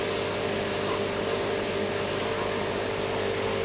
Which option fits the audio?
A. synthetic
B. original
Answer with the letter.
B